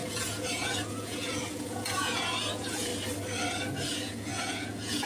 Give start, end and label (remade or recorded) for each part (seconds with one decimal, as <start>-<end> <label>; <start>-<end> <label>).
0.0-2.9 remade; 2.9-3.9 recorded; 3.9-5.1 remade